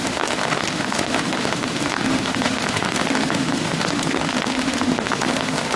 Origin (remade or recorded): remade